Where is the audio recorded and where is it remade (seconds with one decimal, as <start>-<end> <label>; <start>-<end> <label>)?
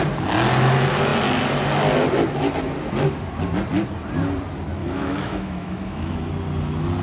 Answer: 0.0-4.8 recorded; 4.8-6.3 remade; 6.3-7.0 recorded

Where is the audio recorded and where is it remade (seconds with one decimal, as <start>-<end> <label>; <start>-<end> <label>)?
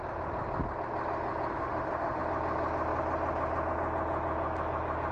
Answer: 0.0-1.5 recorded; 1.5-2.2 remade; 2.2-5.1 recorded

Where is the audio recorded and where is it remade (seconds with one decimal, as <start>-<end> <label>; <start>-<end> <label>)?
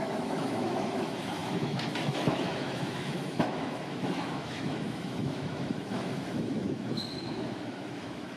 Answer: 0.0-8.4 remade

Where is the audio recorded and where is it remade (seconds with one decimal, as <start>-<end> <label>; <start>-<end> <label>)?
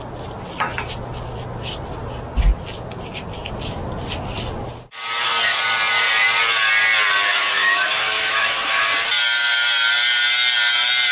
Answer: 0.0-7.3 recorded; 7.3-8.8 remade; 8.8-11.1 recorded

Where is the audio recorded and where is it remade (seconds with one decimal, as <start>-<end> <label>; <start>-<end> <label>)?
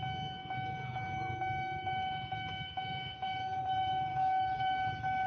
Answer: 0.0-0.4 recorded; 0.4-3.6 remade; 3.6-4.1 recorded; 4.1-4.6 remade; 4.6-5.3 recorded